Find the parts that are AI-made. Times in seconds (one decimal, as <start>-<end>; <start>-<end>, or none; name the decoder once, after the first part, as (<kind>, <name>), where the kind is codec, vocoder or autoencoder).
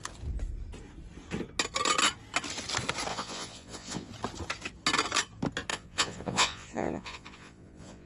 3.1-4.1 (vocoder, Vocos); 5.7-8.1